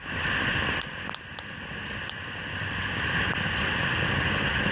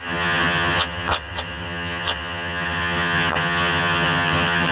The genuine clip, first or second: first